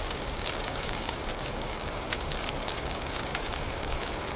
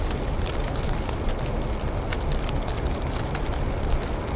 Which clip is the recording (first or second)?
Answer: second